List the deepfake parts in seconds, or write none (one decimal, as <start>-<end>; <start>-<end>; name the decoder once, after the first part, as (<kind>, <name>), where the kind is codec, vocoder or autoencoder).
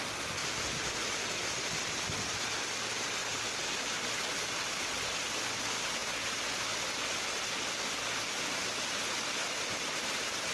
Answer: none